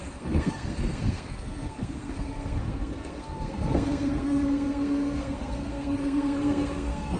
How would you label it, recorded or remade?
remade